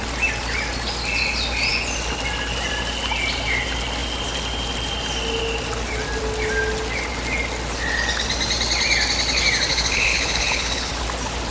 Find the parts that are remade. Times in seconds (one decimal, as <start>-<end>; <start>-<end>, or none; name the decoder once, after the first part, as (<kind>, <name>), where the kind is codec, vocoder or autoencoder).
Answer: 9.7-10.9 (codec, HILCodec)